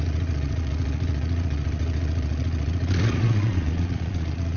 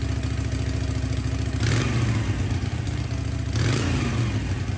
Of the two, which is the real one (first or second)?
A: second